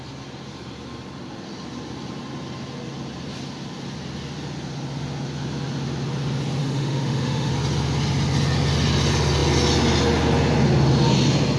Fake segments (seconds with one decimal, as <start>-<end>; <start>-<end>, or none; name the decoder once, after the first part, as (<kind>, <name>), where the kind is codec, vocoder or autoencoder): 6.6-7.5 (autoencoder, DAC-VAE)